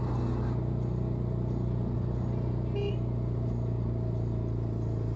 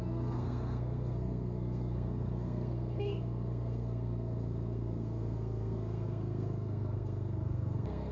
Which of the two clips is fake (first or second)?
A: second